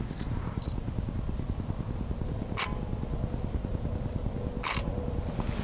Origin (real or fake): real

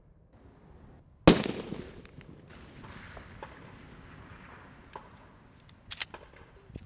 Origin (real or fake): real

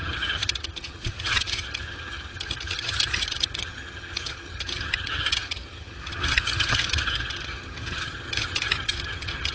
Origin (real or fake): fake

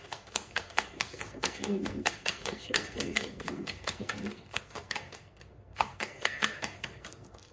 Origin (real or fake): fake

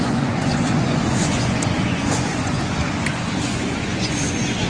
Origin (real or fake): fake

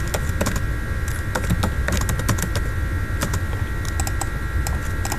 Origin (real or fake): real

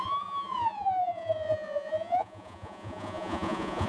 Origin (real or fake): fake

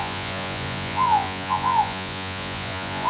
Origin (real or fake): fake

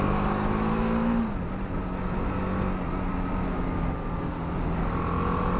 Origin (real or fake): real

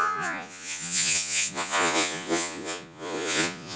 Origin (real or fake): fake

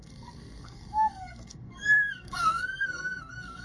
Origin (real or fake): fake